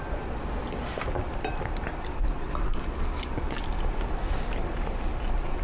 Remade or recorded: recorded